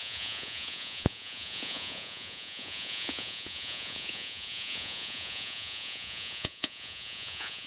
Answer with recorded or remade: remade